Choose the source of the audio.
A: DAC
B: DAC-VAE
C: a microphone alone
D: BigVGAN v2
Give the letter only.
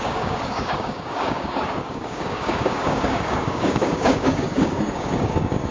A